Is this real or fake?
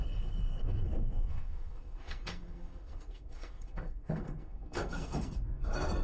fake